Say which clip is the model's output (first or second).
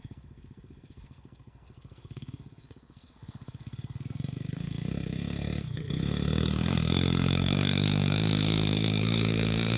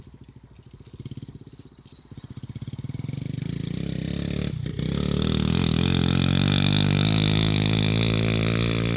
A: first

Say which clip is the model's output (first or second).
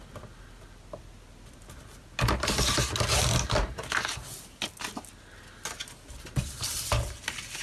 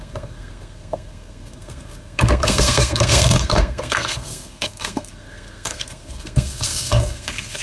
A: second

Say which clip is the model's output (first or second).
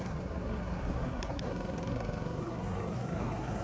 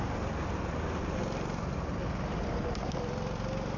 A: first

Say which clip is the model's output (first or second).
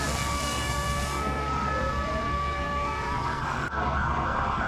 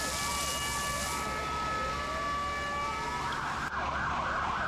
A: first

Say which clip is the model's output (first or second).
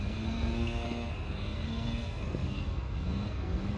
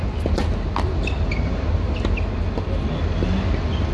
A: first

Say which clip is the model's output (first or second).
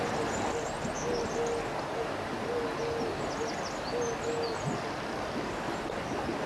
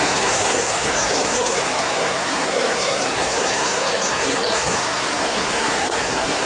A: second